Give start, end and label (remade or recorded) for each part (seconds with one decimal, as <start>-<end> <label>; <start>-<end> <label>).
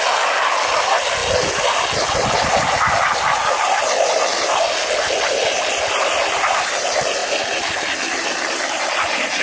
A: 0.0-9.4 recorded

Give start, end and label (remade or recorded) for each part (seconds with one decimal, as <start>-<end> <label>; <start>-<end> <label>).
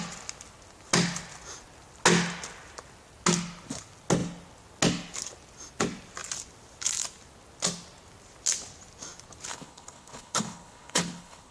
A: 0.0-9.5 recorded; 9.5-11.5 remade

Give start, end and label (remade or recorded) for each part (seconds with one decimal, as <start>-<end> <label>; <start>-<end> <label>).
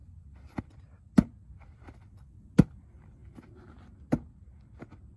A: 0.0-0.6 remade; 0.6-5.2 recorded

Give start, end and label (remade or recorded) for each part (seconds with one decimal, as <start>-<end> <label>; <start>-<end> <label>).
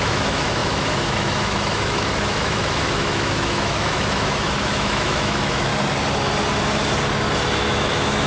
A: 0.0-5.7 remade; 5.7-7.6 recorded; 7.6-8.3 remade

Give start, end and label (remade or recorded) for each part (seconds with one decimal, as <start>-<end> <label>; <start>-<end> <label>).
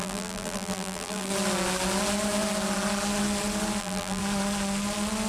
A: 0.0-1.3 remade; 1.3-3.8 recorded; 3.8-4.2 remade; 4.2-5.3 recorded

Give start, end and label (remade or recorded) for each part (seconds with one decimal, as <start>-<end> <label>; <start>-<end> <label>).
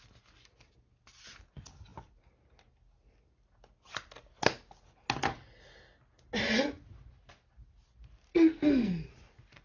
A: 0.0-8.3 recorded; 8.3-9.1 remade; 9.1-9.6 recorded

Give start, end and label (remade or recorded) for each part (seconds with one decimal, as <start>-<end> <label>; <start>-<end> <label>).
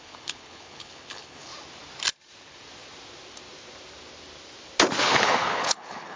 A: 0.0-1.5 remade; 1.5-5.0 recorded; 5.0-6.2 remade